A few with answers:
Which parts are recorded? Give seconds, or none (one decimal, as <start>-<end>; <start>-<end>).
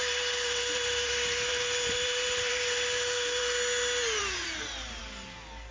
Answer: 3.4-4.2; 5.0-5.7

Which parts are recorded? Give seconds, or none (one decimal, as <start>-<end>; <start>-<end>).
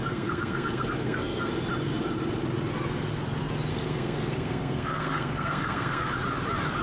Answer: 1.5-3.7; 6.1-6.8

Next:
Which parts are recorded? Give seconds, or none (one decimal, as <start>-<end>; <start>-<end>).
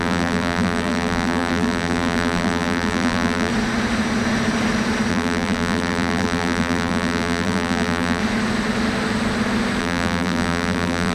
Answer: 3.5-5.1; 8.2-9.8